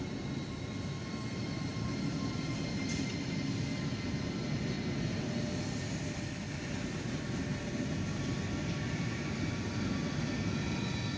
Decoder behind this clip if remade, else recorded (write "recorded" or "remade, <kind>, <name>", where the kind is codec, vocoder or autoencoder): recorded